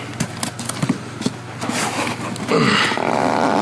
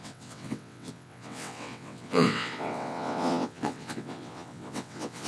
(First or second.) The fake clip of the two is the second